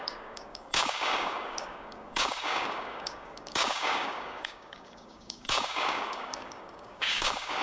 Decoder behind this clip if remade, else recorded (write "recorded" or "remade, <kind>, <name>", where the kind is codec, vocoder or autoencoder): remade, codec, DAC